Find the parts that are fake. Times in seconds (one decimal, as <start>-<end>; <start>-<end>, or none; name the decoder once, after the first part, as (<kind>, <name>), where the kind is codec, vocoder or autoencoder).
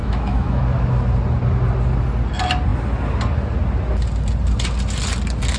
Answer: 0.0-0.6 (autoencoder, DAC-VAE)